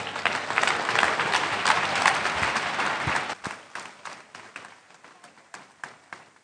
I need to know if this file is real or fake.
real